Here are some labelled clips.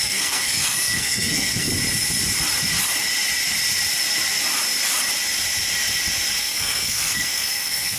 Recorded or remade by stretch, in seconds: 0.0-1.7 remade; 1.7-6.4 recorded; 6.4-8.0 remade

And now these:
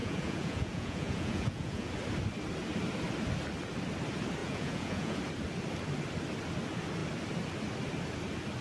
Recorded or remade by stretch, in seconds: 0.0-1.9 remade; 1.9-4.4 recorded; 4.4-5.2 remade; 5.2-8.6 recorded

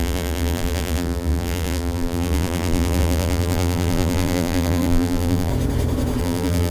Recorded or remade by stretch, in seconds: 0.0-5.5 remade; 5.5-6.2 recorded; 6.2-6.7 remade

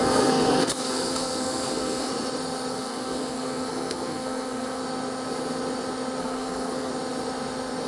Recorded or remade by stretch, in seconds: 0.0-2.1 remade; 2.1-2.7 recorded; 2.7-4.8 remade; 4.8-6.2 recorded; 6.2-6.9 remade; 6.9-7.9 recorded

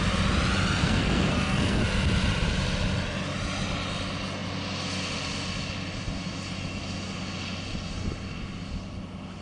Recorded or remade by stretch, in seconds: 0.0-0.8 recorded; 0.8-1.8 remade; 1.8-9.4 recorded